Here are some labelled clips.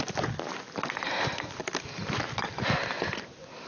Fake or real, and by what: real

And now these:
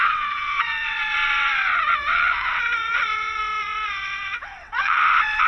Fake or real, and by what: fake, vocoder, WaveNeXt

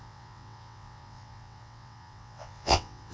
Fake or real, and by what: fake, vocoder, WaveNeXt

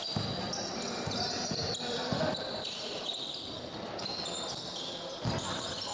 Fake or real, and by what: real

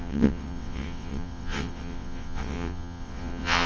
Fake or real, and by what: fake, vocoder, WaveNeXt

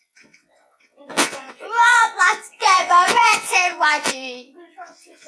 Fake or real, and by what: fake, vocoder, WaveNeXt